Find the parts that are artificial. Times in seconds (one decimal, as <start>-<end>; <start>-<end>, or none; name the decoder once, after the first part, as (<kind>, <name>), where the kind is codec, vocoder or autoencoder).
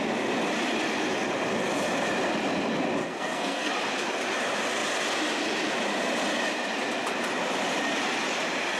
3.0-3.7 (codec, SNAC)